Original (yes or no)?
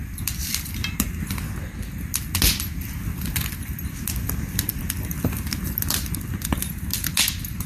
yes